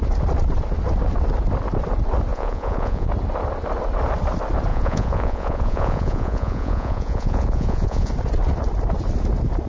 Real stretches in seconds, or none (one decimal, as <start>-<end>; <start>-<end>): 0.0-2.3; 3.1-4.7; 8.1-9.7